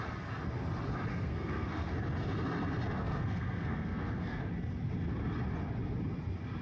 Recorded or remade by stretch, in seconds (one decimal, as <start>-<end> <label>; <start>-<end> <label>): 0.0-1.1 recorded; 1.1-1.9 remade; 1.9-3.0 recorded; 3.0-4.5 remade; 4.5-6.6 recorded